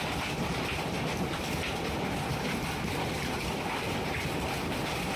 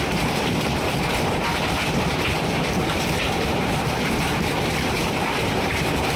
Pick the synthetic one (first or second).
second